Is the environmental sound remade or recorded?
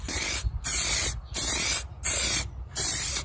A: recorded